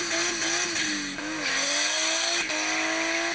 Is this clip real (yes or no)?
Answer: yes